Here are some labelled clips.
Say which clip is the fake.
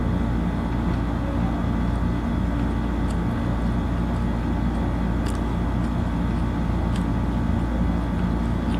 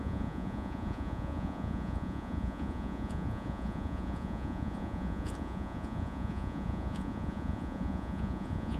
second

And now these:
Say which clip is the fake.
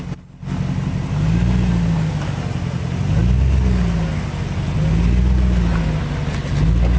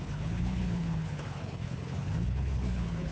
second